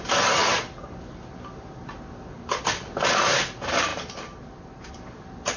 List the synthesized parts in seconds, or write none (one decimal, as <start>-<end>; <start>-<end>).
none